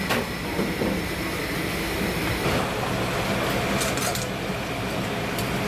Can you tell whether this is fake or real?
real